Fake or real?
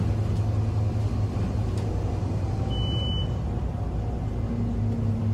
real